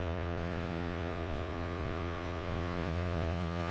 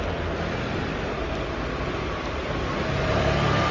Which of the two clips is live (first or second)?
second